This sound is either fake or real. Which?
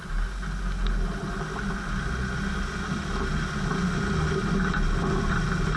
real